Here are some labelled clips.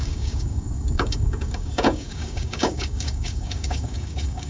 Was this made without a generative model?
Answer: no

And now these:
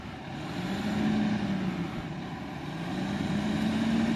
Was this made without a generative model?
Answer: yes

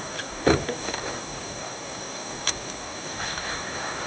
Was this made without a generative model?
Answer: no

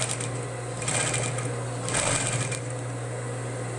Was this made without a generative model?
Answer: yes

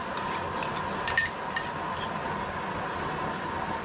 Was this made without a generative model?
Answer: yes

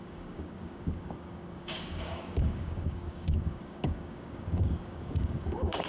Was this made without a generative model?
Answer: no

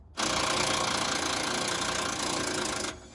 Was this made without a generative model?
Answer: yes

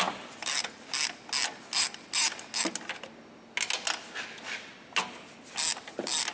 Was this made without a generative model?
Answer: yes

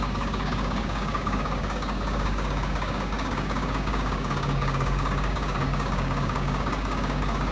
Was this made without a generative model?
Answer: no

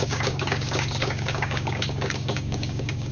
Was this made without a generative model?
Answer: no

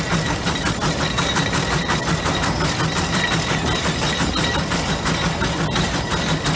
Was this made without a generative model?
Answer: yes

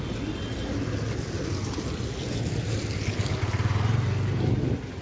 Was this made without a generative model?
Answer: yes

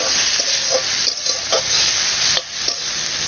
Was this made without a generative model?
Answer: yes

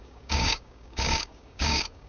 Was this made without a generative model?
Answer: no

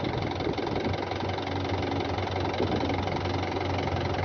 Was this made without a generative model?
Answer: yes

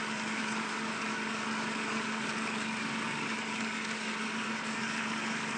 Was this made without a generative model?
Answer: no